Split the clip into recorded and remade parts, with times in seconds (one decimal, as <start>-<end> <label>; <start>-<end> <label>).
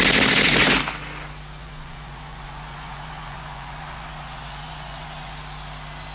0.0-1.6 recorded; 1.6-5.3 remade; 5.3-6.1 recorded